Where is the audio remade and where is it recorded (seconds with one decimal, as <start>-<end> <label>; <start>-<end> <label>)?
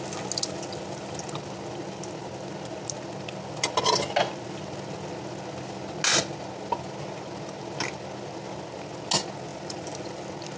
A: 0.0-9.5 recorded; 9.5-10.2 remade; 10.2-10.6 recorded